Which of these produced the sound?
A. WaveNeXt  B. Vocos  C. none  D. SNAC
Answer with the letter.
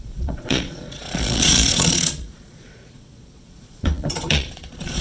B